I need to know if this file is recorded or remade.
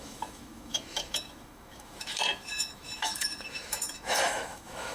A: remade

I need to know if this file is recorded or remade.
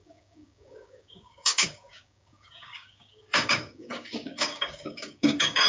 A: remade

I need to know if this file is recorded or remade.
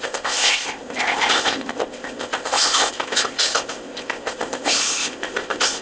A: remade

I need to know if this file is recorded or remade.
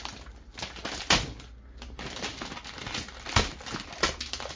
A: recorded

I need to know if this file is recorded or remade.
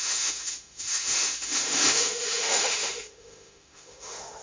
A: remade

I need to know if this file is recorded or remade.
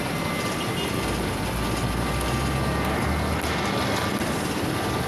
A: recorded